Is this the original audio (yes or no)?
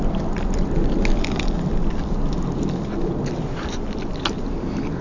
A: yes